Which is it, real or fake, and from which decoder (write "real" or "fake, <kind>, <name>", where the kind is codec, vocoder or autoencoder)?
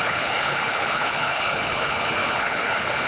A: fake, codec, HILCodec